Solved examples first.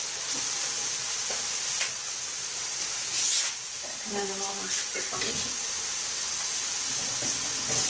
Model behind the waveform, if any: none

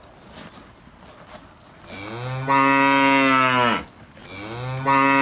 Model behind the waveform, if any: none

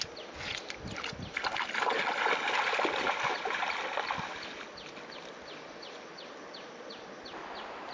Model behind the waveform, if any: none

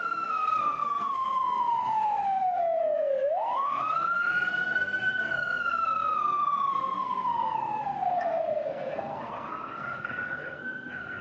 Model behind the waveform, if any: codec, SNAC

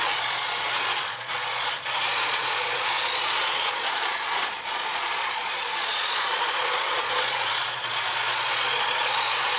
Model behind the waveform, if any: vocoder, Vocos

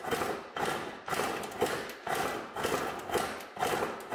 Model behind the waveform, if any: none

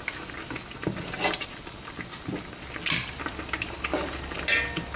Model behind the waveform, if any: none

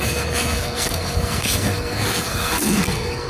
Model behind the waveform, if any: codec, SNAC